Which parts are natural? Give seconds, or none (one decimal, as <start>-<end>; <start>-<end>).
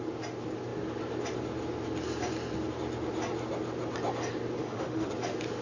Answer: 0.0-4.6; 5.1-5.6